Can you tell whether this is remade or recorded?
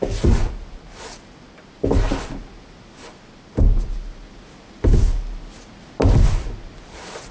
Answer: recorded